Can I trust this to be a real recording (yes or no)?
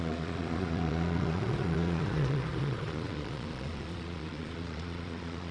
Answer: no